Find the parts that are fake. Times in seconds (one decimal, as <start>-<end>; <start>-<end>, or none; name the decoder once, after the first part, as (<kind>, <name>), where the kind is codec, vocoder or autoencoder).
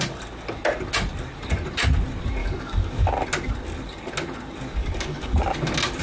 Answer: 2.4-3.1 (codec, DAC); 4.8-5.4